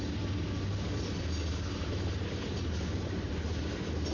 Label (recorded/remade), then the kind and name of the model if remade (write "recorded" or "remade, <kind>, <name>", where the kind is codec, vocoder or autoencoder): recorded